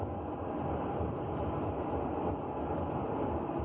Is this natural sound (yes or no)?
yes